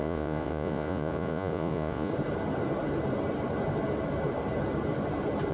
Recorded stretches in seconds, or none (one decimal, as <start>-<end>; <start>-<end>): 2.1-5.5